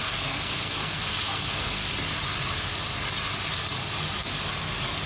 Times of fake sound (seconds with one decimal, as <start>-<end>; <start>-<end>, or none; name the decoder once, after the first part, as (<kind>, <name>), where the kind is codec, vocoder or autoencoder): 0.0-1.8 (codec, SNAC)